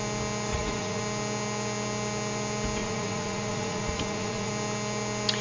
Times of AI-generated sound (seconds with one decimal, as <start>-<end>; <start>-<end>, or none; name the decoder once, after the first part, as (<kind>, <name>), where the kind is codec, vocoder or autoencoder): 0.5-1.0 (vocoder, Vocos); 2.8-4.5